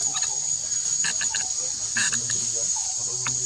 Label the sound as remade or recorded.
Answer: recorded